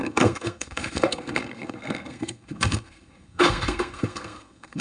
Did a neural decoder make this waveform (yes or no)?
yes